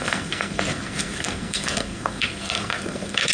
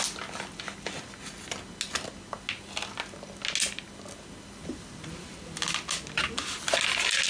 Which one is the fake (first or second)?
first